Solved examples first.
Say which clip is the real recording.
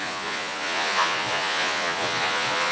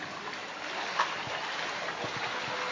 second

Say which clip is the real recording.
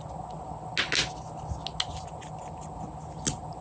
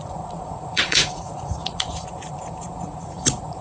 first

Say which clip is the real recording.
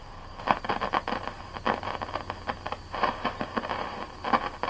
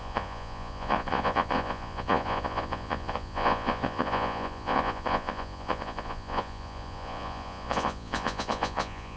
first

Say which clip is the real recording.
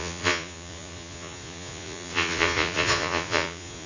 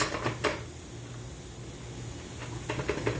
second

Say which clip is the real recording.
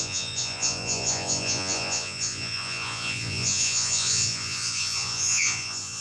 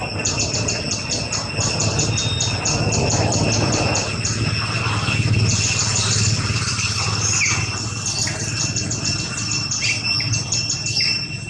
second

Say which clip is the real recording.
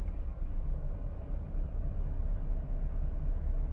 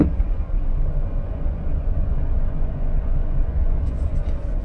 first